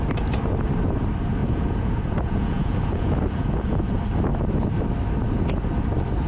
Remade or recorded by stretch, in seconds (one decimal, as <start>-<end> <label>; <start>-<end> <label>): 0.0-1.4 recorded; 1.4-4.0 remade; 4.0-6.3 recorded